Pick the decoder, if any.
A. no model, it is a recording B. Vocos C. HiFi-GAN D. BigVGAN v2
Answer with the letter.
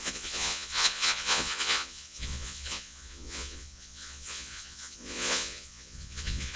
B